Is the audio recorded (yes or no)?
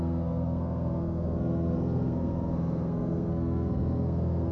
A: no